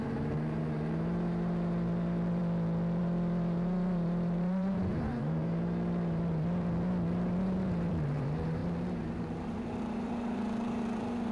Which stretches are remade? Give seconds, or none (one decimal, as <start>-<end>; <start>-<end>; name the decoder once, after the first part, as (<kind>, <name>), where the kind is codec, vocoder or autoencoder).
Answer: 0.0-2.4 (vocoder, BigVGAN v2); 3.0-11.3